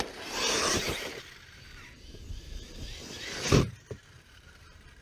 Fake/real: fake